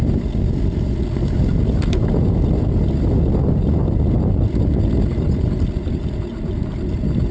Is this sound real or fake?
real